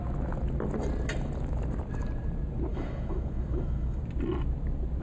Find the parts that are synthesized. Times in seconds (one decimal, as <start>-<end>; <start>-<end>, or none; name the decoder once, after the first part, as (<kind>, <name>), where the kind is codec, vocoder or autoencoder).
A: 2.7-4.0 (autoencoder, DAC-VAE)